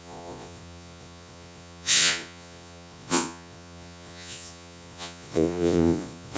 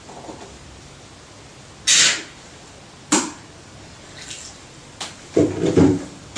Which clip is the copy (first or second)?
first